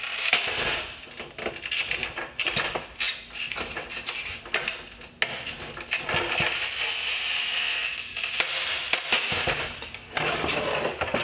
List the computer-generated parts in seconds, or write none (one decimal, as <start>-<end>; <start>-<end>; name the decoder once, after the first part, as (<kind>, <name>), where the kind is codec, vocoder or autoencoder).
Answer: none